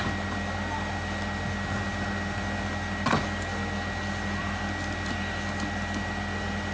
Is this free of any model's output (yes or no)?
yes